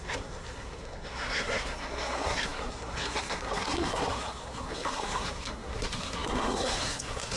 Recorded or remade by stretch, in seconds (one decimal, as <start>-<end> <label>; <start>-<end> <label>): 0.0-7.4 remade

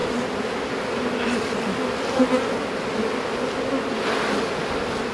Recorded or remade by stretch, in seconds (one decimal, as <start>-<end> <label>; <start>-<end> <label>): 0.0-5.1 recorded

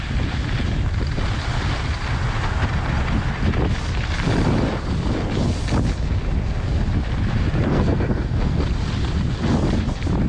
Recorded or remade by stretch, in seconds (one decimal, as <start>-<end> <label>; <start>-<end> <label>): 0.0-7.7 recorded; 7.7-8.6 remade; 8.6-10.3 recorded

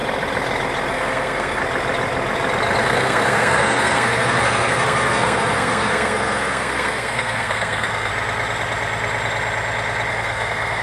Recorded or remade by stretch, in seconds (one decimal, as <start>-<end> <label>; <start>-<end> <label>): 0.0-0.9 recorded; 0.9-1.6 remade; 1.6-2.8 recorded; 2.8-8.1 remade; 8.1-10.1 recorded; 10.1-10.8 remade

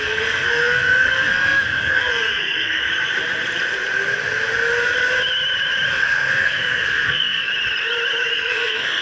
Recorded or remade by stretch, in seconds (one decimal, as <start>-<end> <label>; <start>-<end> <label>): 0.0-2.9 remade; 2.9-5.9 recorded; 5.9-7.5 remade; 7.5-8.3 recorded; 8.3-9.0 remade